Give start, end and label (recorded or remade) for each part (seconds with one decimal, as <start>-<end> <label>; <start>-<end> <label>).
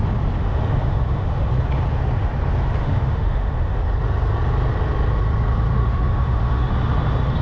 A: 0.0-0.4 recorded; 0.4-1.5 remade; 1.5-2.8 recorded; 2.8-3.8 remade; 3.8-5.8 recorded; 5.8-6.7 remade; 6.7-7.4 recorded